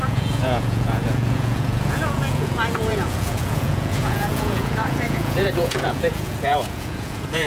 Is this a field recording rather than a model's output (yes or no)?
no